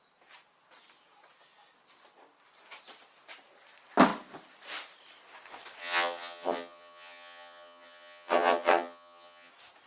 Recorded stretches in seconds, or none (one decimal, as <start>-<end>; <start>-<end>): 0.0-5.8; 9.5-9.9